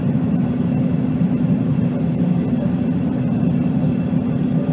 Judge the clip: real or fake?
fake